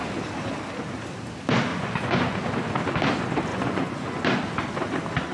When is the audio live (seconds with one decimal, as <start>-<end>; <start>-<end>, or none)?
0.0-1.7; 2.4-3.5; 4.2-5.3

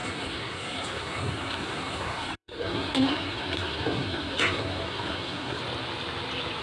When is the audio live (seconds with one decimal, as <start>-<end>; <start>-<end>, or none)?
5.6-6.6

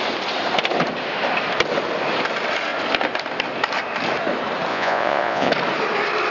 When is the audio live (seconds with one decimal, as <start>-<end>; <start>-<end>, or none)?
0.0-4.7; 5.5-6.3

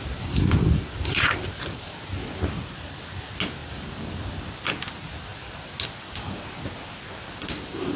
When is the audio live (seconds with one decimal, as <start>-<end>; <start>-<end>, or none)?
0.0-3.6; 4.3-8.0